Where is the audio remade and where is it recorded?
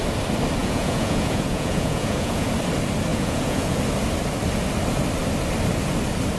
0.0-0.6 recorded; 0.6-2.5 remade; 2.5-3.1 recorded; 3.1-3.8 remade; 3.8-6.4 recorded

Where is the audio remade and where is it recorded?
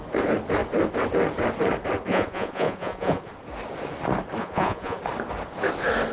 0.0-2.1 recorded; 2.1-3.3 remade; 3.3-4.4 recorded; 4.4-5.0 remade; 5.0-6.1 recorded